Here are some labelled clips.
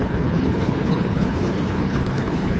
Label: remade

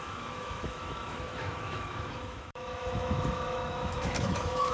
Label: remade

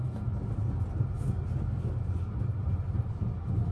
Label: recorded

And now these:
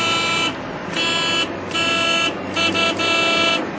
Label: recorded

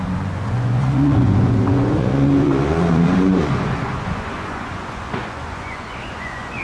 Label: remade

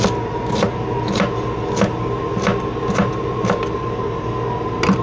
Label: recorded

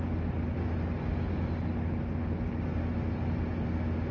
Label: recorded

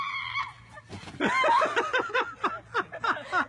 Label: recorded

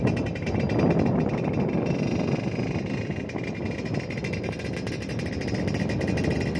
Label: recorded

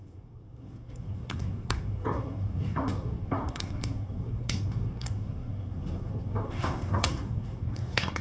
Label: remade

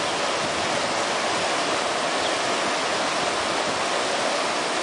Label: recorded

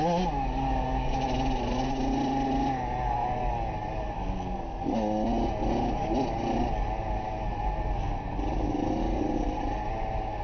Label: recorded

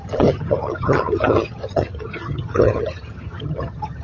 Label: remade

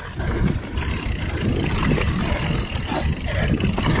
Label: remade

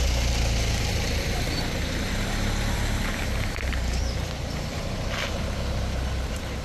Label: remade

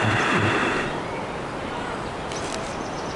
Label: remade